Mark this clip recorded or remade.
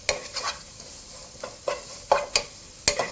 recorded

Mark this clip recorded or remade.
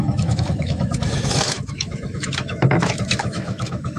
remade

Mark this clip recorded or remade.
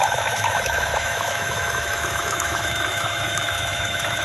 remade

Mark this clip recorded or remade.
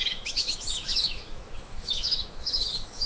remade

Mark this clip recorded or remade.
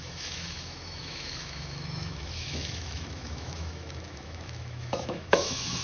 remade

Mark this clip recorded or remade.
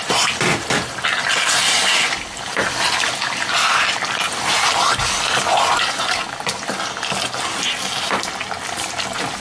recorded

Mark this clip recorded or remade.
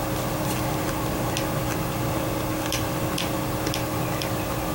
recorded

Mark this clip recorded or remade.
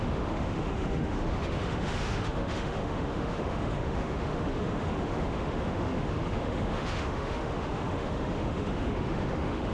remade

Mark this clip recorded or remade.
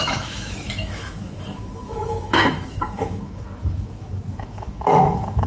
remade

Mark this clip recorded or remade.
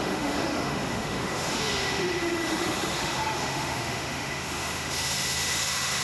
remade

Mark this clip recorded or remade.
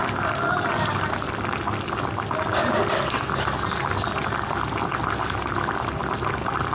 recorded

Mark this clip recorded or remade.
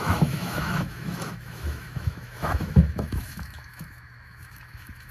remade